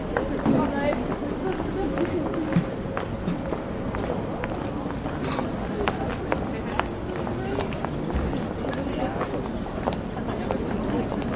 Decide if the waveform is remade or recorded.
recorded